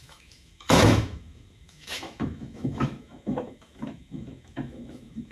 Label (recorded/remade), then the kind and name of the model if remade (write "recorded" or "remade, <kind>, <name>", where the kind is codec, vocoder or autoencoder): remade, autoencoder, DAC-VAE